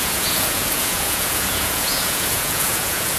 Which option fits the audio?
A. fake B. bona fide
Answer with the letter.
A